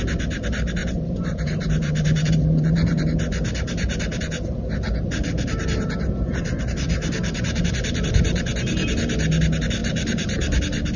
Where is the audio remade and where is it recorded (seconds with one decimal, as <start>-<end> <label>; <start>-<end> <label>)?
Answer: 0.0-0.8 recorded; 0.8-3.2 remade; 3.2-5.2 recorded; 5.2-8.4 remade; 8.4-9.8 recorded; 9.8-10.6 remade; 10.6-11.0 recorded